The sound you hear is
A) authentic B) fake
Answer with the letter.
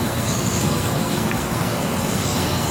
B